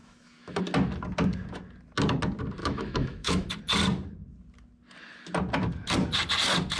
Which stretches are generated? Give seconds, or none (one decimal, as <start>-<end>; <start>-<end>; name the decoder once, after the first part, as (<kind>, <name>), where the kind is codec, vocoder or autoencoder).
0.0-0.6 (autoencoder, DAC-VAE); 2.6-3.5